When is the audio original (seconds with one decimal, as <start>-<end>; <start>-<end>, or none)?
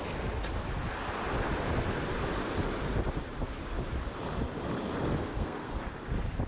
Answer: 0.0-5.2; 5.8-6.5